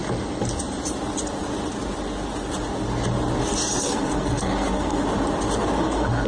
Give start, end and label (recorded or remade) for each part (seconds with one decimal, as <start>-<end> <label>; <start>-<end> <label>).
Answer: 0.0-3.8 recorded; 3.8-5.0 remade; 5.0-5.8 recorded; 5.8-6.3 remade